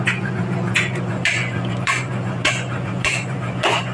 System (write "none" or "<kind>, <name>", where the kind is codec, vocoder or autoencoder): vocoder, Vocos